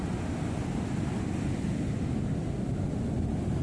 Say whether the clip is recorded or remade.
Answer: recorded